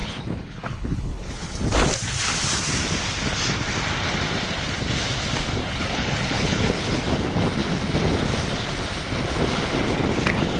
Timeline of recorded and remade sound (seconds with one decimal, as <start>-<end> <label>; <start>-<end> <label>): 0.0-1.5 remade; 1.5-5.6 recorded; 5.6-7.0 remade; 7.0-10.6 recorded